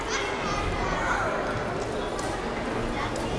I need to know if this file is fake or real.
real